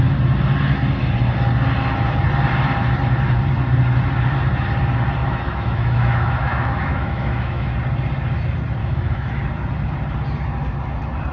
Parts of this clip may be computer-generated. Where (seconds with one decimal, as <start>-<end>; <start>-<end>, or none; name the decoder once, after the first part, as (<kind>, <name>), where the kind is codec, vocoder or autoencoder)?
5.2-7.7 (autoencoder, DAC-VAE); 8.8-9.4